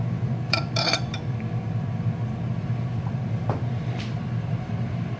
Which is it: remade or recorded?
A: remade